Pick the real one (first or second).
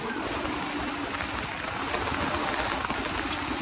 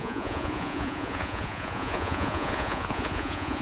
first